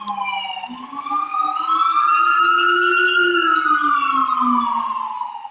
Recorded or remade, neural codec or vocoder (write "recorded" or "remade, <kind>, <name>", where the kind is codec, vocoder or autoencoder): recorded